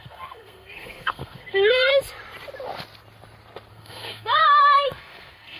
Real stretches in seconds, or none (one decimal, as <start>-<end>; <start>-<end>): 1.9-3.7